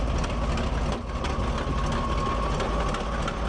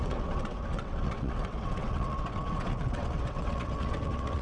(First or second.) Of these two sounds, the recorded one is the first